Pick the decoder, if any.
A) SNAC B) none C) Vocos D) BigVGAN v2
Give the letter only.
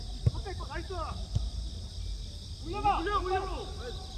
B